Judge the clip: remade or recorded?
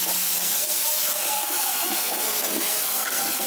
remade